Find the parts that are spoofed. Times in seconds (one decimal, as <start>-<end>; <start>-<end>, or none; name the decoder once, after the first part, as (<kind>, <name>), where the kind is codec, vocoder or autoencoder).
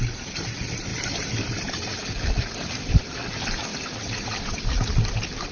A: 0.9-3.3 (vocoder, BigVGAN v2); 3.7-4.6